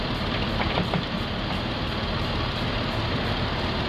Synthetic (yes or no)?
no